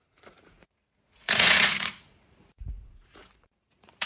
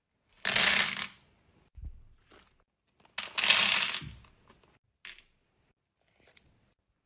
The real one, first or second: second